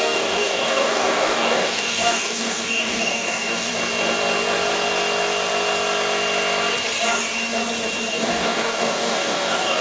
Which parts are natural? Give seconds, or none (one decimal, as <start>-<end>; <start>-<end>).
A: 3.7-8.1